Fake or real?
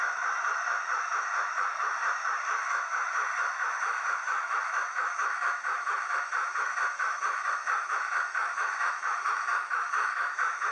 fake